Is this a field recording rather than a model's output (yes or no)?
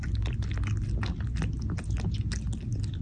yes